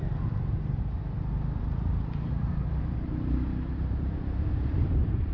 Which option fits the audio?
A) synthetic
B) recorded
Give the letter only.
A